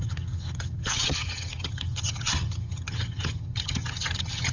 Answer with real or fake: fake